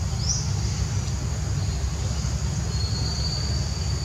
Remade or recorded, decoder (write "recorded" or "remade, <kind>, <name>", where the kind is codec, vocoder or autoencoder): recorded